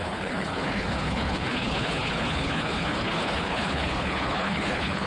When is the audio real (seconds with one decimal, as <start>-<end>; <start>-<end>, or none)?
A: none